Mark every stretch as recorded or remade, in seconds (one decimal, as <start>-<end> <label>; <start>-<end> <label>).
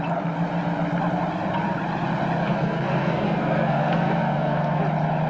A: 0.0-2.4 recorded; 2.4-4.8 remade; 4.8-5.3 recorded